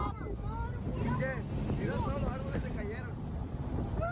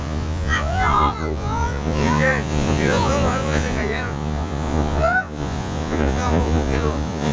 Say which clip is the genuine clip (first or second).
first